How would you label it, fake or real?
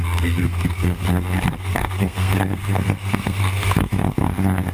fake